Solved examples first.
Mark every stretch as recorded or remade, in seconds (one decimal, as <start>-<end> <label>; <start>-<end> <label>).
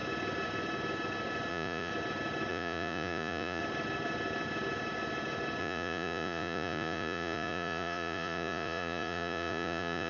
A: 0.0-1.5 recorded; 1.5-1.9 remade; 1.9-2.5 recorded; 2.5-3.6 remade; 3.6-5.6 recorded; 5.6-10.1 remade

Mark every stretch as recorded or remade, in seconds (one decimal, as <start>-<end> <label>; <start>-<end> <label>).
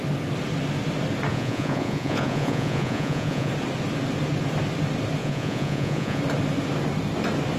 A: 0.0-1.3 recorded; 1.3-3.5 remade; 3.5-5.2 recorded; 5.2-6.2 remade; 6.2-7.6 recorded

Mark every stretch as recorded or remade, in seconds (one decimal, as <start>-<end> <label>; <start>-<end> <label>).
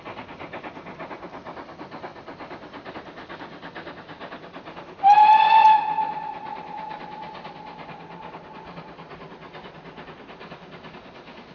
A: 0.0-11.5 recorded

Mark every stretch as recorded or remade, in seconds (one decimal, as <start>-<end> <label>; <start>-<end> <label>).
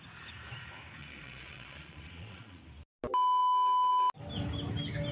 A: 0.0-1.0 recorded; 1.0-2.6 remade; 2.6-5.1 recorded